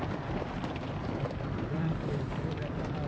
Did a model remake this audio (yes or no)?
yes